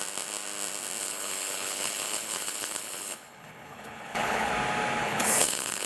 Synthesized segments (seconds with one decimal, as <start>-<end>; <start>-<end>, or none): 1.0-4.5; 5.0-5.9